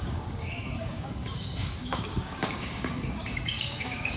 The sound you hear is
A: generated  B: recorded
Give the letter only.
A